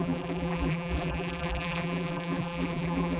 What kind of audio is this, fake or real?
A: fake